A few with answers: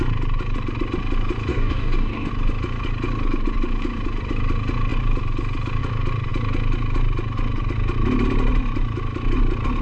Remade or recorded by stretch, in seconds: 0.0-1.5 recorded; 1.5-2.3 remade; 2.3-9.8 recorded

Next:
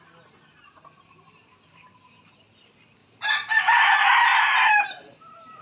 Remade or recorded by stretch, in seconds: 0.0-3.0 recorded; 3.0-3.9 remade; 3.9-4.3 recorded; 4.3-5.6 remade

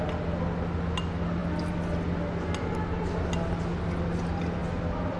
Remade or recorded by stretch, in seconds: 0.0-5.2 recorded

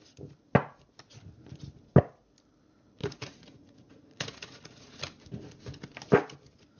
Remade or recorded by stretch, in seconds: 0.0-3.0 recorded; 3.0-5.0 remade; 5.0-6.8 recorded

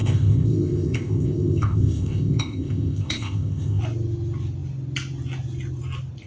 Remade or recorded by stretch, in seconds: 0.0-3.8 remade; 3.8-6.3 recorded

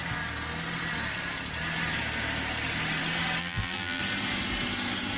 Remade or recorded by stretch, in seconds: 0.0-3.4 recorded; 3.4-4.0 remade; 4.0-5.2 recorded

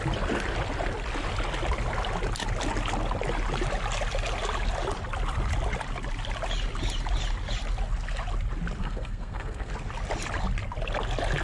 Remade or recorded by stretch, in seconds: 0.0-8.8 recorded; 8.8-9.7 remade; 9.7-11.4 recorded

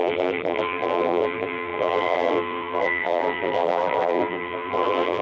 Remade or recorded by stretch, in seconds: 0.0-5.2 remade